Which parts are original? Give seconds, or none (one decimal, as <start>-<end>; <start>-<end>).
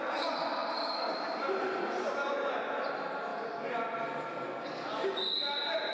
0.0-5.9